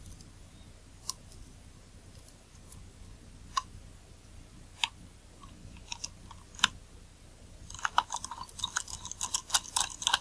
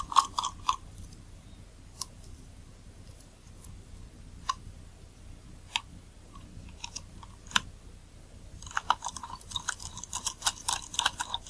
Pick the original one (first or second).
first